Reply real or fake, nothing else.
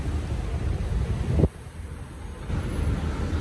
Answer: real